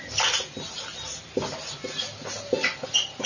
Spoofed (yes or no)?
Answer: no